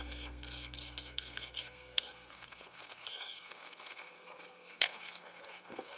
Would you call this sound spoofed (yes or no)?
yes